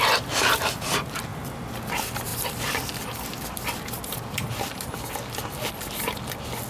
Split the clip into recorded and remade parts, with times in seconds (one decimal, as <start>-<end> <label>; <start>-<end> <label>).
0.0-6.7 recorded